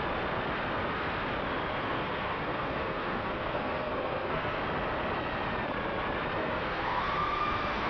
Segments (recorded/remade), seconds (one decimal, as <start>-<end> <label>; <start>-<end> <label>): 0.0-1.8 recorded; 1.8-4.6 remade; 4.6-6.4 recorded; 6.4-7.9 remade